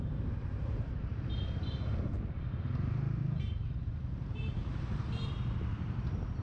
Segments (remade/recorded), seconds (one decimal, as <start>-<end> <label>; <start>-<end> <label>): 0.0-2.1 recorded; 2.1-5.1 remade; 5.1-6.4 recorded